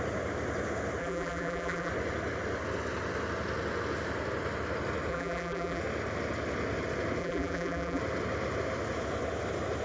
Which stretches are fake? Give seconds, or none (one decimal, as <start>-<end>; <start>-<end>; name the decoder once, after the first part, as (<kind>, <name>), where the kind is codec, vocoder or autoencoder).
1.0-1.9 (vocoder, BigVGAN v2); 5.1-5.8; 7.2-8.0